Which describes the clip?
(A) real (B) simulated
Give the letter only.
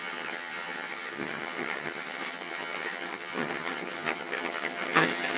B